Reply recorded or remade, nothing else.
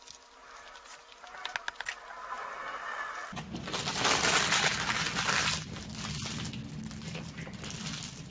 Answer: recorded